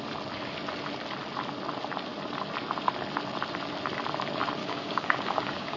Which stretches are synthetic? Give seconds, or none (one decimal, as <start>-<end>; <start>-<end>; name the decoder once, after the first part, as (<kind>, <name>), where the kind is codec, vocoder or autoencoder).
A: 4.6-5.8 (codec, DAC)